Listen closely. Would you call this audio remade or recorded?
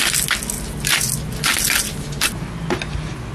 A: recorded